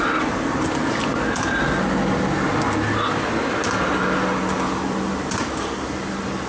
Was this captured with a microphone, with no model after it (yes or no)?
yes